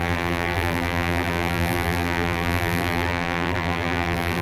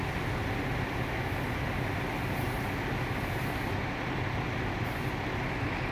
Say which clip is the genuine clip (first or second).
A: second